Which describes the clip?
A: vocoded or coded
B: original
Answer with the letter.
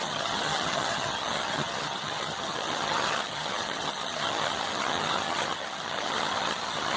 A